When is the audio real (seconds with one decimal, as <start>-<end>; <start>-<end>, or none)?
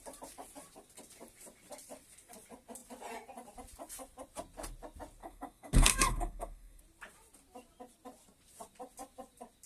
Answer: 0.0-5.2; 6.8-9.7